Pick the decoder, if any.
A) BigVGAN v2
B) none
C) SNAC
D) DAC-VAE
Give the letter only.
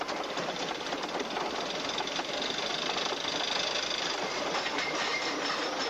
B